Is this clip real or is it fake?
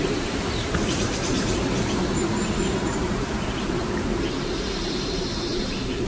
fake